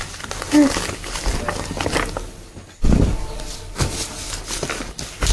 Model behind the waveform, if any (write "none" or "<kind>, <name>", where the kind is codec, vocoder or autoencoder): none